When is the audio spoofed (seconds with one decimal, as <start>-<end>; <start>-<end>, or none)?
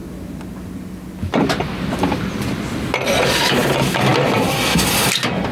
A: none